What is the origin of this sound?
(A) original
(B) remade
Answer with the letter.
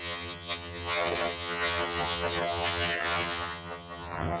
B